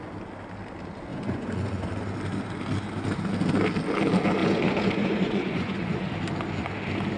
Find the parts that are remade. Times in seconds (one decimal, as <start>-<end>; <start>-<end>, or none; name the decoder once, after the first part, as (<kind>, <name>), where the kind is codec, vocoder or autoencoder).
1.1-1.9 (vocoder, Vocos); 4.4-6.1